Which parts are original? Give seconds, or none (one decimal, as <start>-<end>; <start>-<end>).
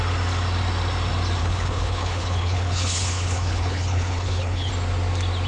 0.0-1.4; 4.7-5.5